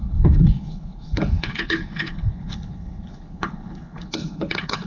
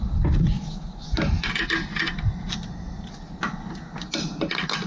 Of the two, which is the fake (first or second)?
first